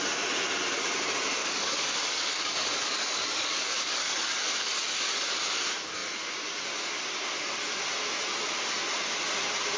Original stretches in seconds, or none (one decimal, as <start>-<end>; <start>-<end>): 0.0-1.4; 5.4-9.8